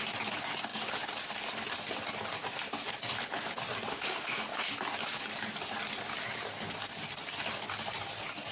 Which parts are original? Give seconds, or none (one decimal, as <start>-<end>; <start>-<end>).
0.0-3.9; 4.7-8.5